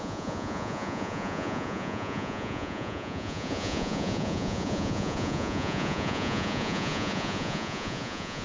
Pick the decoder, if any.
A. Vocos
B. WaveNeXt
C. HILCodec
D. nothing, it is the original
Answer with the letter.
A